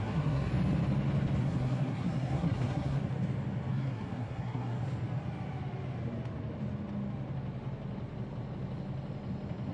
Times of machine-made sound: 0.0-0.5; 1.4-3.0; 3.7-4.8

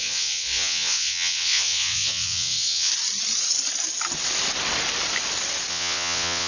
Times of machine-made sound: 0.0-2.9; 5.7-6.5

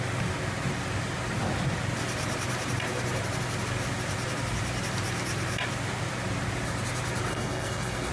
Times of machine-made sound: 7.3-8.1

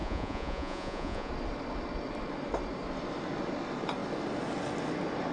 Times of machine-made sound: 0.0-1.3

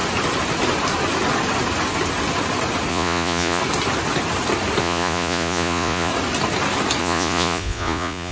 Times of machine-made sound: 2.9-3.6; 4.8-6.1; 7.0-8.3

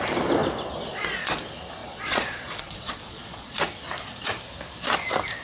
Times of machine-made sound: 0.9-1.4; 1.8-3.6